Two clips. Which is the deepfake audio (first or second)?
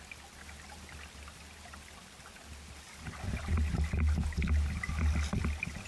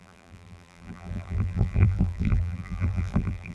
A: second